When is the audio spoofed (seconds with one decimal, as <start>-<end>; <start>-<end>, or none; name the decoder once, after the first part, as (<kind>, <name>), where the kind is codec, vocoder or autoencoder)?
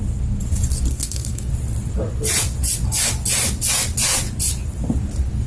0.9-1.5 (codec, SNAC)